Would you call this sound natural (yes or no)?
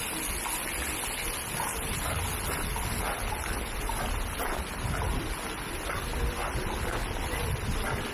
yes